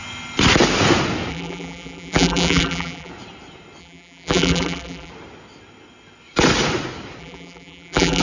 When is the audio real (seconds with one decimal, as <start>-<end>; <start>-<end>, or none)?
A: 0.0-1.3; 3.1-3.8; 5.1-7.2